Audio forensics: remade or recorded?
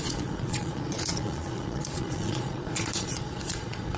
remade